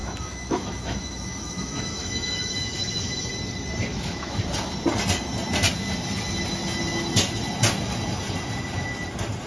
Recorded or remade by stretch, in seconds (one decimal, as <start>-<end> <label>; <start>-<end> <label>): 0.0-3.3 remade; 3.3-3.9 recorded; 3.9-4.4 remade; 4.4-9.5 recorded